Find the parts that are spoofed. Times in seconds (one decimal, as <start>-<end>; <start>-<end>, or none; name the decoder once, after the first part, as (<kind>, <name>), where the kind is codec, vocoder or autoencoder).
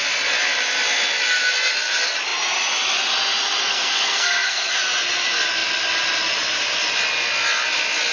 3.6-4.8 (codec, SNAC)